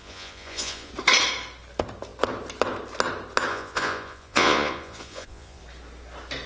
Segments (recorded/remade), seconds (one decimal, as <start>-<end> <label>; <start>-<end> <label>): 0.0-0.9 remade; 0.9-3.5 recorded; 3.5-5.6 remade; 5.6-6.5 recorded